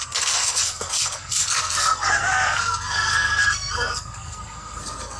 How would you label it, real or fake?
fake